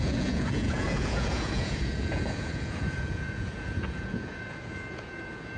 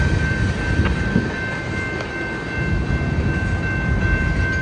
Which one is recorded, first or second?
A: second